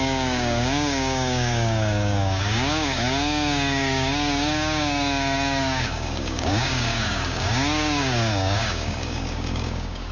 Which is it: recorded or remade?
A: remade